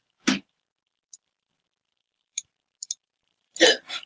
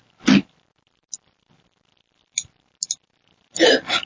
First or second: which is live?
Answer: second